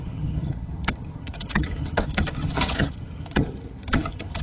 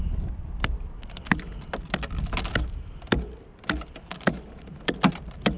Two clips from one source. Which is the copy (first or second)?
first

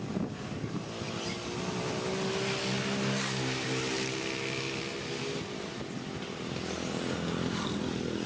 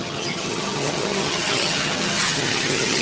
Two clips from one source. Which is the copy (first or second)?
second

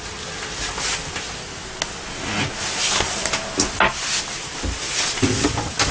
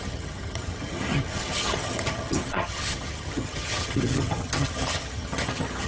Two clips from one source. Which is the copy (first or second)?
second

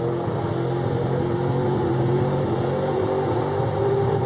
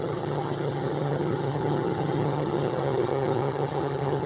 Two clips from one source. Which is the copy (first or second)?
second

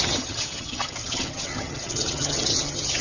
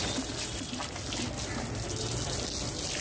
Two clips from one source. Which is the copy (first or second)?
first